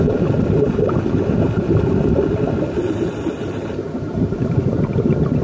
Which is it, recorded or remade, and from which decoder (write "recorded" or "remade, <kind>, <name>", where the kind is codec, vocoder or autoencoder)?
remade, vocoder, BigVGAN v2